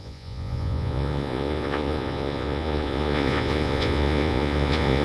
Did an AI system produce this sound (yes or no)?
yes